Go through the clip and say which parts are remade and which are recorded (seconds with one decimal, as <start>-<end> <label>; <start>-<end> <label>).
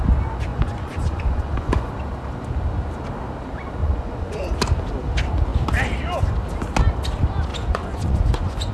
0.0-0.5 recorded; 0.5-1.9 remade; 1.9-3.8 recorded; 3.8-4.4 remade; 4.4-7.5 recorded; 7.5-8.7 remade